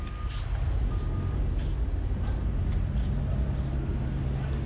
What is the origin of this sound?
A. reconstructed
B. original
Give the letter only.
B